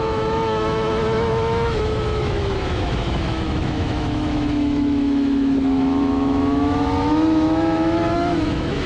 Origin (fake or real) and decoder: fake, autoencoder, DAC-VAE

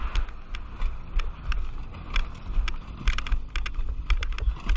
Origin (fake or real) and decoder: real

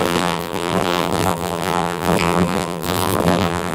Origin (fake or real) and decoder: fake, vocoder, BigVGAN v2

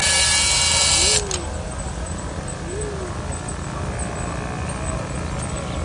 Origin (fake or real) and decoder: real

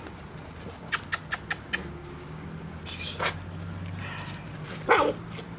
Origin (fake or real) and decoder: real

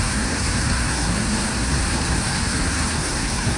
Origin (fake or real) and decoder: fake, codec, SNAC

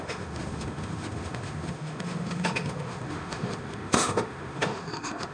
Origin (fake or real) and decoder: fake, autoencoder, DAC-VAE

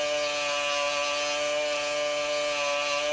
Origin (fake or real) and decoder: real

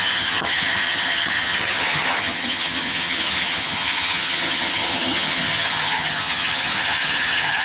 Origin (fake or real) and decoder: fake, vocoder, HiFi-GAN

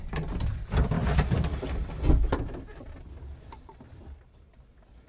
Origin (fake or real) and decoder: fake, vocoder, BigVGAN v2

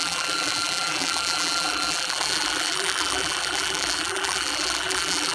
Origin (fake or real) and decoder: fake, vocoder, BigVGAN v2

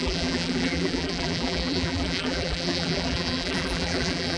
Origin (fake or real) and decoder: fake, vocoder, BigVGAN v2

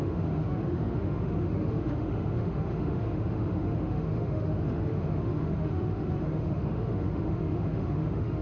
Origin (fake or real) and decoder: fake, autoencoder, DAC-VAE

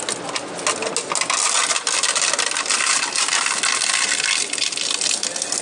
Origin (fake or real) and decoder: real